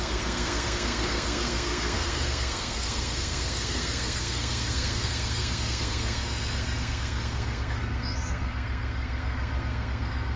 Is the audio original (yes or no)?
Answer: no